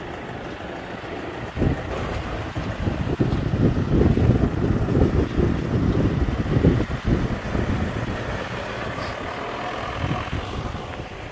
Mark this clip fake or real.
real